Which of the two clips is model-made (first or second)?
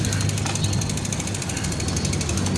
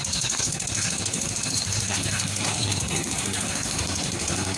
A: second